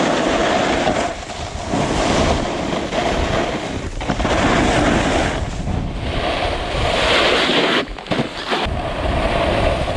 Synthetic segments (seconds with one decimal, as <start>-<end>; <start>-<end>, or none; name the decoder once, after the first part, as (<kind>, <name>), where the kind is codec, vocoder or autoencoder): none